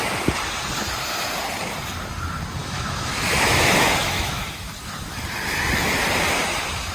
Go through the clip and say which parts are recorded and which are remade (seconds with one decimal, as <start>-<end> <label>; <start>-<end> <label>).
0.0-2.6 recorded; 2.6-4.7 remade; 4.7-6.9 recorded